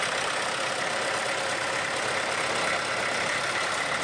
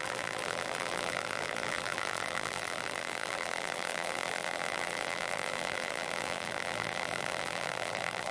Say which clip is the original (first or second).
first